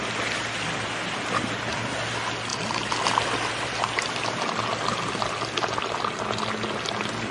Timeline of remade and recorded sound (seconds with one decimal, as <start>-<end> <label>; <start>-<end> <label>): 0.0-7.3 recorded